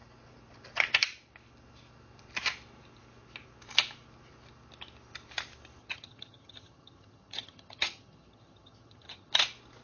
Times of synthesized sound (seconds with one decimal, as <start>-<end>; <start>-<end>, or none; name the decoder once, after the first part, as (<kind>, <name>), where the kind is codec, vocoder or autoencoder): 5.8-9.3 (vocoder, HiFi-GAN)